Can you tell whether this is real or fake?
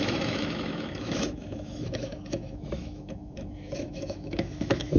fake